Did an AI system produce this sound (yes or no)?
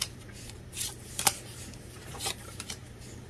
yes